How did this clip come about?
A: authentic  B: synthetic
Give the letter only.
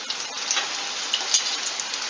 A